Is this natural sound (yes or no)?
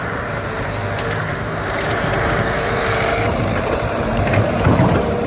no